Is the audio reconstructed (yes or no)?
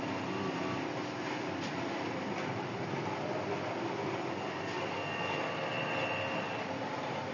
no